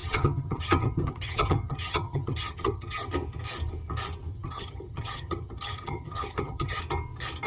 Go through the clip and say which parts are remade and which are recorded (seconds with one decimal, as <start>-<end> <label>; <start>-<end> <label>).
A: 0.0-3.1 remade; 3.1-4.3 recorded; 4.3-6.8 remade; 6.8-7.5 recorded